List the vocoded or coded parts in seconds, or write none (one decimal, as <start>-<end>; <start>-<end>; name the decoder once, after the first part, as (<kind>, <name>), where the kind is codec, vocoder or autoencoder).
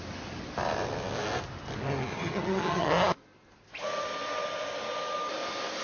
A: 2.1-2.9 (vocoder, HiFi-GAN)